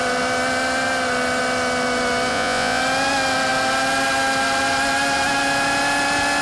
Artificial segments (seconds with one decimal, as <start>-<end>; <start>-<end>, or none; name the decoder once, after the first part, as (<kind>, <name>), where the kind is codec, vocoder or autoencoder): 2.3-2.8 (vocoder, Vocos)

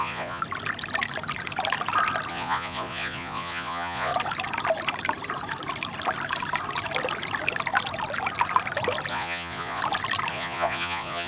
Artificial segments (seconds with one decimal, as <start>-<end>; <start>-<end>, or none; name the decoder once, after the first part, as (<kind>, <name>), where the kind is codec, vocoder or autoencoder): 0.0-0.4 (vocoder, Vocos); 2.3-4.1; 9.1-9.8; 10.3-11.3

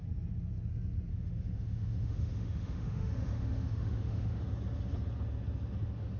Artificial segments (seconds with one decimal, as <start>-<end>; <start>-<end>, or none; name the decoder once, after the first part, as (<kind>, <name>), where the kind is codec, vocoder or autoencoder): 1.1-4.4 (autoencoder, DAC-VAE)

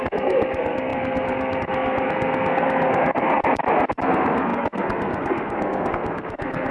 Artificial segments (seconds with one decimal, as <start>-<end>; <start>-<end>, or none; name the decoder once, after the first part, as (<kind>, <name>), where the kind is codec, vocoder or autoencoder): 0.0-3.4 (codec, SNAC); 4.0-6.7

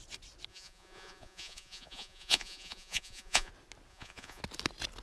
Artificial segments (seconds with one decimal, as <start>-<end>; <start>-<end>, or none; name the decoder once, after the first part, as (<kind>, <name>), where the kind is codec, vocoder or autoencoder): 0.5-3.5 (vocoder, Vocos); 3.9-4.4

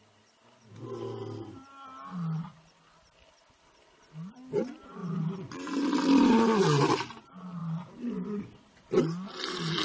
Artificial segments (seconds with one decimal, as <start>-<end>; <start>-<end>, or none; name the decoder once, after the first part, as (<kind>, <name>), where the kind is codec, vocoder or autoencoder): 5.0-6.0 (vocoder, BigVGAN v2)